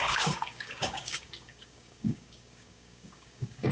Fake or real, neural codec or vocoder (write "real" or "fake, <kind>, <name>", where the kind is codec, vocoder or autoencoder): fake, codec, DAC